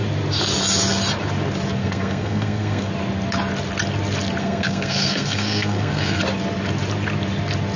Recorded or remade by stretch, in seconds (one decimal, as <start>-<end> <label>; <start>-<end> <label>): 0.0-1.8 recorded; 1.8-2.9 remade; 2.9-4.4 recorded; 4.4-6.2 remade; 6.2-7.8 recorded